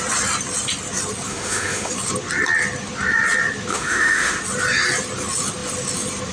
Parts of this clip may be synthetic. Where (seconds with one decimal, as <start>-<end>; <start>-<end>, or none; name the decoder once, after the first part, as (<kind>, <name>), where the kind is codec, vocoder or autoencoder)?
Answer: 1.3-1.9 (autoencoder, DAC-VAE); 3.7-4.4